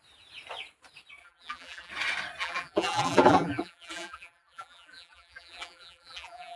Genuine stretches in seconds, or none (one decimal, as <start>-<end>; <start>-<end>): 0.0-1.2; 1.9-2.4